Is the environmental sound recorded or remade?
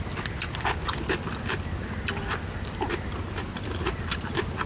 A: recorded